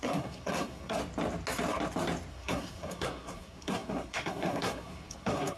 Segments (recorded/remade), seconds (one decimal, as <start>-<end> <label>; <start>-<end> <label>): 0.0-1.0 remade; 1.0-2.3 recorded; 2.3-5.6 remade